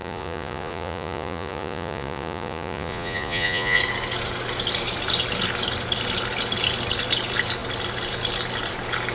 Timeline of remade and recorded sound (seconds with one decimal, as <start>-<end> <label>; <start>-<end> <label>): 0.0-3.8 remade; 3.8-9.1 recorded